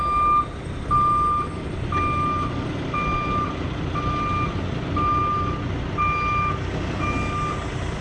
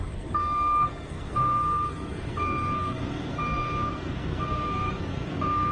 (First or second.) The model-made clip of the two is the second